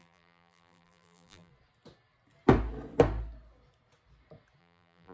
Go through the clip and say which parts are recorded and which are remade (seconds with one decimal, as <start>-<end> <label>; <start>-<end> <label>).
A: 0.0-1.5 remade; 1.5-4.6 recorded; 4.6-5.1 remade